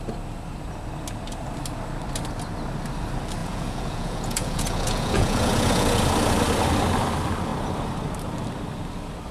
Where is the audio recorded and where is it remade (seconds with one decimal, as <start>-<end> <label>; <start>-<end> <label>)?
0.0-3.4 recorded; 3.4-6.0 remade; 6.0-9.3 recorded